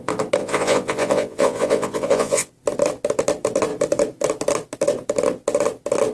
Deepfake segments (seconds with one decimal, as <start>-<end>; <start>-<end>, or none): 0.4-2.5